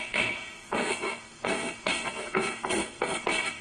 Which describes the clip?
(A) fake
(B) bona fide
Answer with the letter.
A